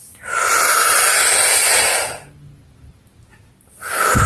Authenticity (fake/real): real